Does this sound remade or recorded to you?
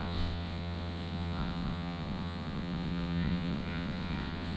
remade